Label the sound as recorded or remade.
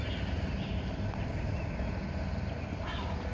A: recorded